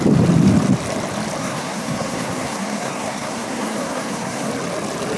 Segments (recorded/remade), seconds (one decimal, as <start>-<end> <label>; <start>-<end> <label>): 0.0-1.4 recorded; 1.4-4.5 remade; 4.5-5.2 recorded